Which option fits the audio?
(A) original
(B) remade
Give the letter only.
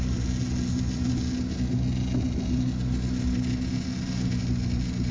A